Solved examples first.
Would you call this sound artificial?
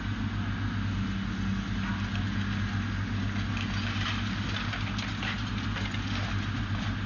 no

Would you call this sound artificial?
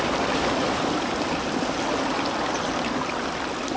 no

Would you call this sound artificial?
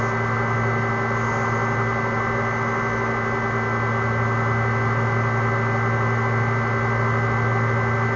no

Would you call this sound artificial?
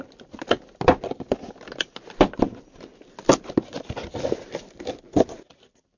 no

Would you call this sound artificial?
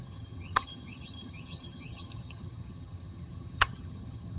yes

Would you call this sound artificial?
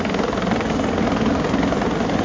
no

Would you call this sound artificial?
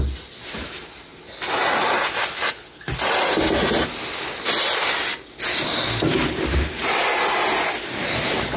no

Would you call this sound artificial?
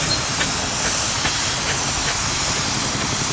no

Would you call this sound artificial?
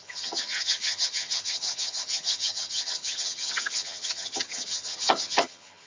yes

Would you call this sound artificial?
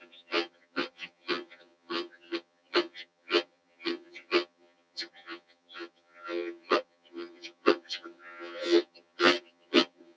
yes